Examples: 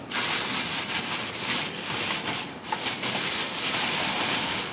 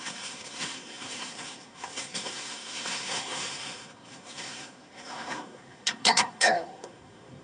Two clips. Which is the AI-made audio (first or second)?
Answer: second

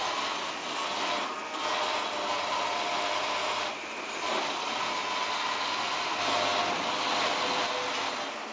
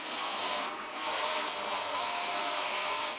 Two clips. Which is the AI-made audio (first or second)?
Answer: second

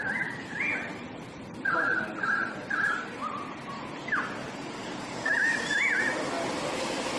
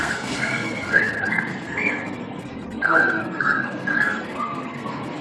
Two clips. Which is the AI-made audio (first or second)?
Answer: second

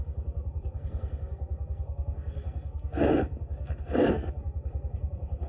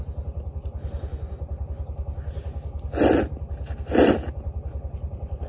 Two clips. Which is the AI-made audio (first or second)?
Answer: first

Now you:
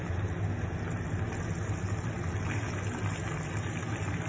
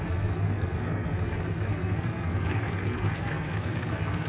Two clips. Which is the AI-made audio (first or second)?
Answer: second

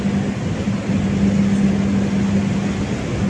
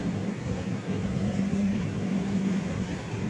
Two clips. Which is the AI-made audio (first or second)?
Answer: second